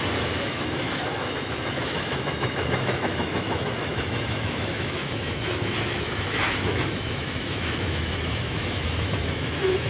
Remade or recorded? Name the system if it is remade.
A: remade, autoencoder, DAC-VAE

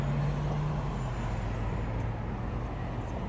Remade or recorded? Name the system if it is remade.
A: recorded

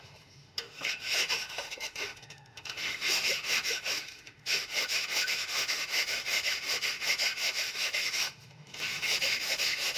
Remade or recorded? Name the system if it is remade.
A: remade, autoencoder, DAC-VAE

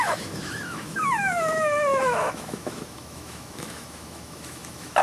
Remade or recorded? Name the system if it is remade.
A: remade, autoencoder, DAC-VAE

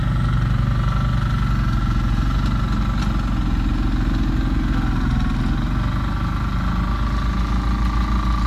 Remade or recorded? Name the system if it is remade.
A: recorded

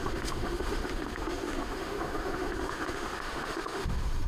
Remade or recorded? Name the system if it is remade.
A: remade, autoencoder, DAC-VAE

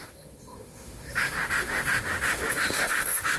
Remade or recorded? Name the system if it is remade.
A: remade, autoencoder, DAC-VAE